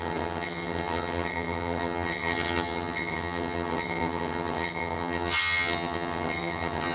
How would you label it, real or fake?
fake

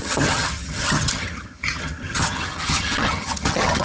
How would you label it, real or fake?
fake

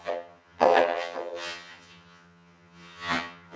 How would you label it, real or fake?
fake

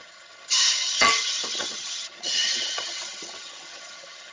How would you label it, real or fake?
fake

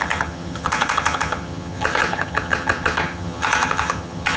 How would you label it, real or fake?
fake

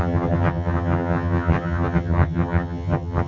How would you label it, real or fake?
fake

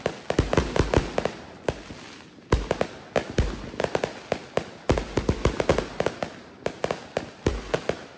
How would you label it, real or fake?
real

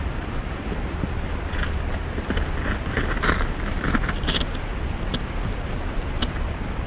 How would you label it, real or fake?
real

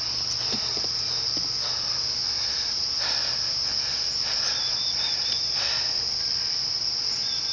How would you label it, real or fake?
real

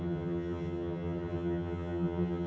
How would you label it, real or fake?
fake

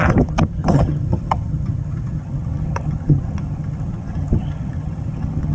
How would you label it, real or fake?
fake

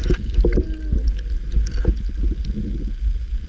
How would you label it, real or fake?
real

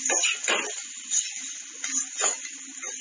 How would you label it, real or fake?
real